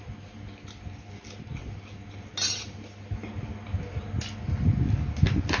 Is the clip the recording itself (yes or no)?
yes